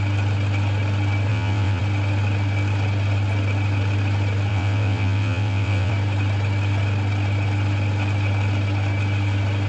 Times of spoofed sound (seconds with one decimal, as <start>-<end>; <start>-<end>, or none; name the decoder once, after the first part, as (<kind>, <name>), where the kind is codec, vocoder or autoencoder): 1.3-1.8 (vocoder, WaveNeXt); 4.5-5.9